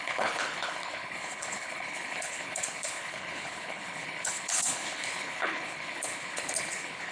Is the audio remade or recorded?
remade